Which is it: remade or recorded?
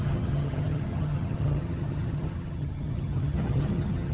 remade